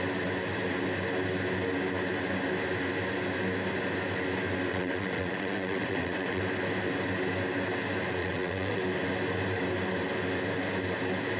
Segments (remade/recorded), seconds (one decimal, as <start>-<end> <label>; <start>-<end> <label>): 0.0-4.7 recorded; 4.7-6.4 remade; 6.4-8.2 recorded; 8.2-8.8 remade; 8.8-11.4 recorded